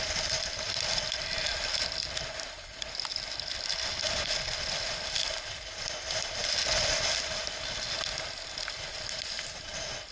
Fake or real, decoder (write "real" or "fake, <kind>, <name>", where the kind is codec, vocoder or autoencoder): real